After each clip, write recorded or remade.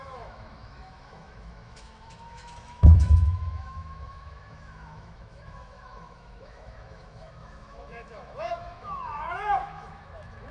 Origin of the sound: remade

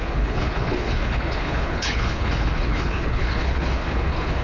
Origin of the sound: remade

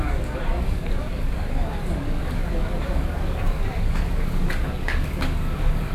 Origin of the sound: remade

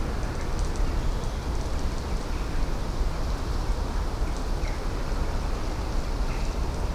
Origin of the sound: recorded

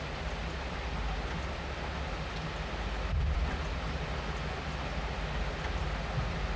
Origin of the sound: recorded